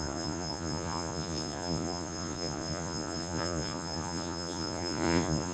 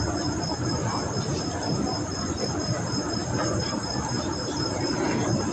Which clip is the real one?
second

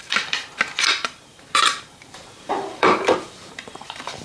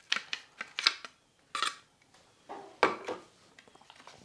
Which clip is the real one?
second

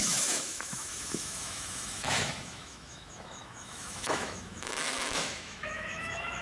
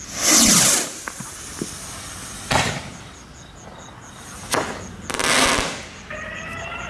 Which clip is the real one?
second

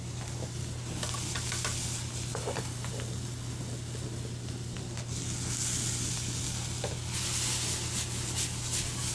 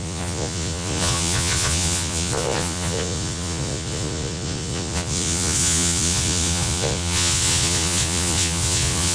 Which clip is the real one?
first